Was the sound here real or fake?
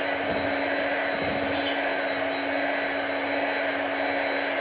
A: real